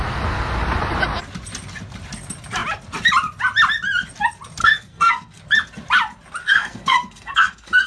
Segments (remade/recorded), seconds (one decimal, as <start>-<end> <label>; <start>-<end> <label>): 0.0-4.6 recorded; 4.6-5.4 remade; 5.4-6.4 recorded; 6.4-7.9 remade